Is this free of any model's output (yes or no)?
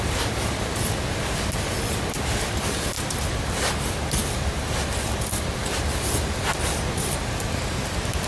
yes